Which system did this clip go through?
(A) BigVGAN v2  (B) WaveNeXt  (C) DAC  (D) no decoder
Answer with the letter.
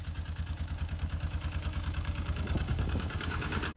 C